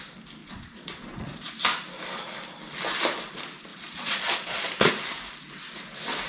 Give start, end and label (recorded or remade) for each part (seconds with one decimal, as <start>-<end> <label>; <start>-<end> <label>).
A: 0.0-0.4 recorded; 0.4-1.5 remade; 1.5-3.7 recorded; 3.7-4.9 remade; 4.9-6.3 recorded